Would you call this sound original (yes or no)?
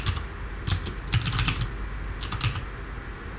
yes